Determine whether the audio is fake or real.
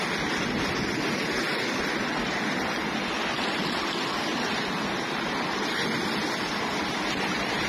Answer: real